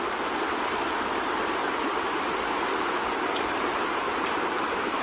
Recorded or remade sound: recorded